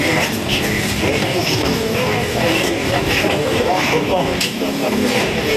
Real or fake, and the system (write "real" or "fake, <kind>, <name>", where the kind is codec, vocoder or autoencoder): fake, codec, DAC